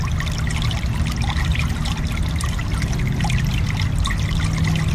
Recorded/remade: recorded